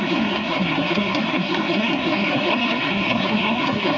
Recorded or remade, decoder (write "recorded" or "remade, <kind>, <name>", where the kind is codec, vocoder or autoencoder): remade, codec, SNAC